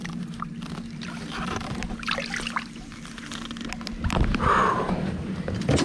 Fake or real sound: real